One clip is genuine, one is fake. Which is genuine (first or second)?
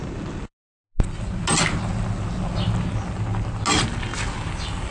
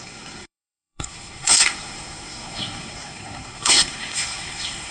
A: first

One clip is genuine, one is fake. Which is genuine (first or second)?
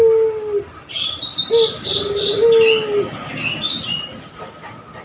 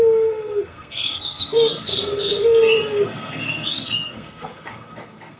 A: first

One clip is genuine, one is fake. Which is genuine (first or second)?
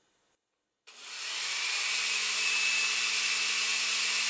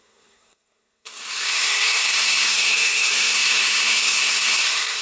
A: first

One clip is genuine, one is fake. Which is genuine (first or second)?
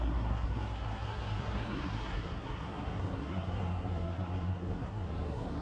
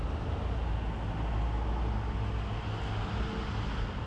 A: second